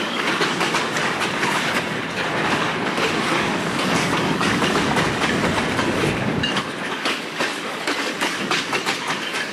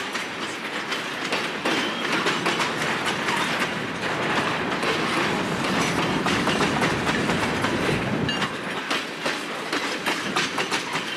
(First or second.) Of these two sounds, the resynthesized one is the first